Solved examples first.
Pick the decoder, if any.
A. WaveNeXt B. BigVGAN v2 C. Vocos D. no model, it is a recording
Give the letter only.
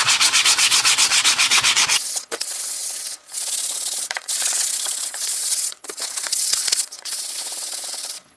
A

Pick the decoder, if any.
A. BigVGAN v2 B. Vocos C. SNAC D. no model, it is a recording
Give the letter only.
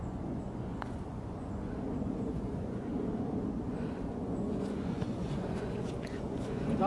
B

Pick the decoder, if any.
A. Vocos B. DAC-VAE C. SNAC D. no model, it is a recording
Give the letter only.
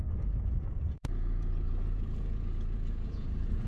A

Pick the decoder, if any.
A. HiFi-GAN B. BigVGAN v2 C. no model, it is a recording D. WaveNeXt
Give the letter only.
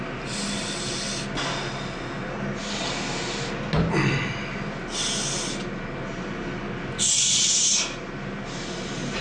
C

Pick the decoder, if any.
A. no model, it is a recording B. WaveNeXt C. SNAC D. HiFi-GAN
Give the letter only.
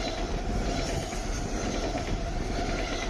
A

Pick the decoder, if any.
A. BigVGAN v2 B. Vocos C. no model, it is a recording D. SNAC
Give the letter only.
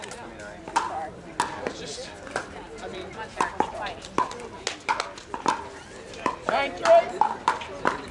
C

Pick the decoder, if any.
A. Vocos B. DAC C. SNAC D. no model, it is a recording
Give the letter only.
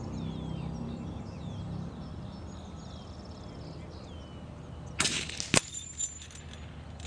D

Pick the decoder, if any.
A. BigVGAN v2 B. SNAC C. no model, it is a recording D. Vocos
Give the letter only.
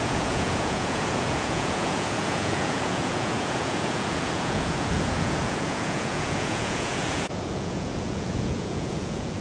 D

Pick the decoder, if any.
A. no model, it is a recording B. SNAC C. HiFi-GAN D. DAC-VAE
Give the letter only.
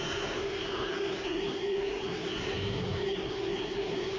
B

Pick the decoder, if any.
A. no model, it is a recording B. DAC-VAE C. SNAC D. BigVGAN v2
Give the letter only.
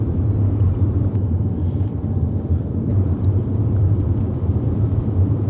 D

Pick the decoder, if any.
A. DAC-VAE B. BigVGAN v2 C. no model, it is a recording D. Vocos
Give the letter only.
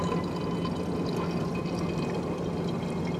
C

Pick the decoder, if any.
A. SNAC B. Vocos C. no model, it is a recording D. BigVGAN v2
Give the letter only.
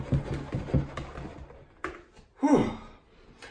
C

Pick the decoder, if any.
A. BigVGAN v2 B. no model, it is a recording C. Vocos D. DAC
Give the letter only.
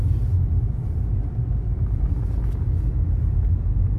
B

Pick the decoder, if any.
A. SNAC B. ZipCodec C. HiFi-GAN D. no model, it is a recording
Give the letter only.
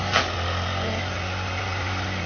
D